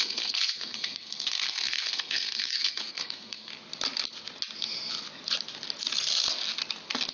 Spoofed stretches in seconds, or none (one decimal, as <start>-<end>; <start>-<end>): 0.0-3.5